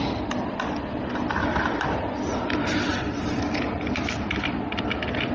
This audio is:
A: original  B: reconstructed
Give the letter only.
A